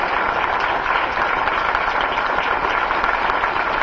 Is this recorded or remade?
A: recorded